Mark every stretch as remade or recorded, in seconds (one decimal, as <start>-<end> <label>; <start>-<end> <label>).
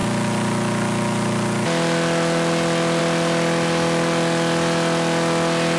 0.0-5.8 recorded